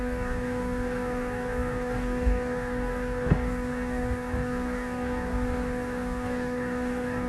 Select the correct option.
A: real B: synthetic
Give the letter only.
B